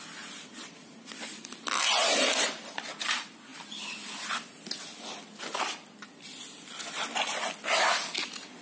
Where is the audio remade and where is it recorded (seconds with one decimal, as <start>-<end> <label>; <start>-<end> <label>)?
0.0-8.6 recorded